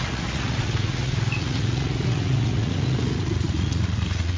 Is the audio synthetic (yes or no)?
yes